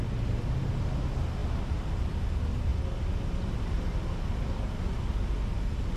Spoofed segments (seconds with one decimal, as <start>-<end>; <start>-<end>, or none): none